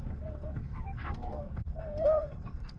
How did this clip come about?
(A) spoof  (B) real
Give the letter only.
A